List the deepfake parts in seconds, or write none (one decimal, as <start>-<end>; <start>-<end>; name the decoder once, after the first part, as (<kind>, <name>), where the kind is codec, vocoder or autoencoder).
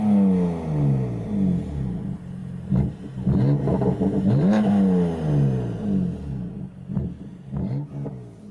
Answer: none